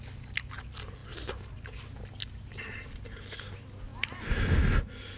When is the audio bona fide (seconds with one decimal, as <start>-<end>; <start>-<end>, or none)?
0.0-5.2